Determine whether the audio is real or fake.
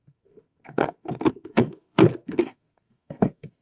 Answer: fake